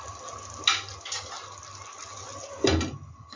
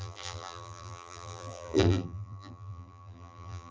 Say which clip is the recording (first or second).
first